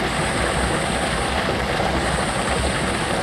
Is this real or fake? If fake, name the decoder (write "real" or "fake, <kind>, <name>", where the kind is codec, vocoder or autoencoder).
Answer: real